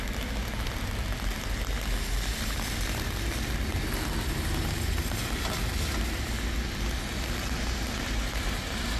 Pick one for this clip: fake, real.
real